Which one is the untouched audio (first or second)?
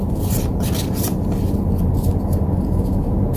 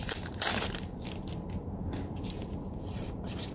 first